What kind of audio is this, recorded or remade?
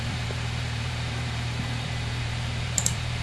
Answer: remade